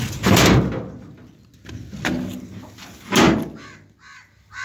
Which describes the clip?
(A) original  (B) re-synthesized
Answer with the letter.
A